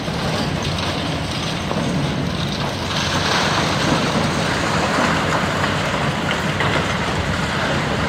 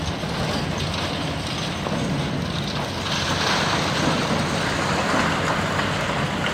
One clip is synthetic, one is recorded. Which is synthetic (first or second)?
first